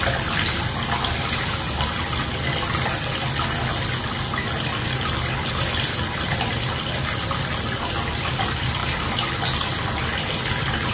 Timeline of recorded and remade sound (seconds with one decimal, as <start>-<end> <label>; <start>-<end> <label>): 0.0-10.9 recorded